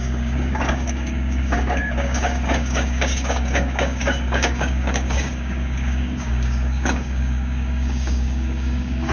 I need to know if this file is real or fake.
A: fake